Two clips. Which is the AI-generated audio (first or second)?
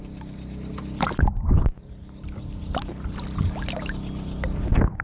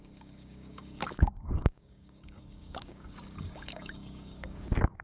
second